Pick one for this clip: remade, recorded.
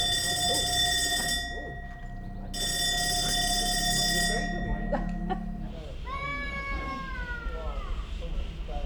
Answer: recorded